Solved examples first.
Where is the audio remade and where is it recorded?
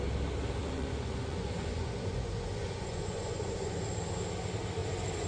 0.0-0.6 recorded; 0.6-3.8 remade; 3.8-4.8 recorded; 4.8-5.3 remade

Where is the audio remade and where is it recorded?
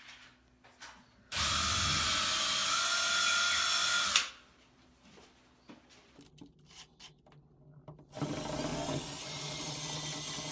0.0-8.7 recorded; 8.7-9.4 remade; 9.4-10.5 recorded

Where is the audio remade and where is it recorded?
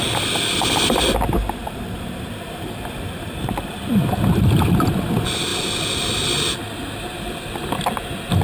0.0-1.6 recorded; 1.6-3.7 remade; 3.7-4.3 recorded; 4.3-4.9 remade; 4.9-8.4 recorded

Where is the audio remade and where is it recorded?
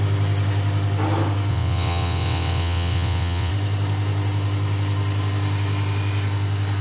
0.0-1.5 recorded; 1.5-3.5 remade; 3.5-6.8 recorded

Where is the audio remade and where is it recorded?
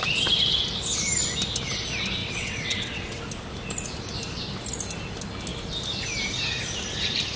0.0-2.2 recorded; 2.2-3.2 remade; 3.2-7.4 recorded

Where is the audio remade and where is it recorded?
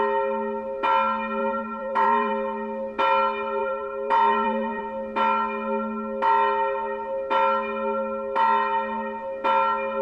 0.0-1.4 recorded; 1.4-2.3 remade; 2.3-3.6 recorded; 3.6-4.8 remade; 4.8-10.0 recorded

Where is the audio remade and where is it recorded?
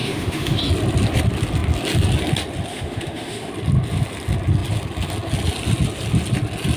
0.0-0.6 remade; 0.6-2.7 recorded; 2.7-3.5 remade; 3.5-6.8 recorded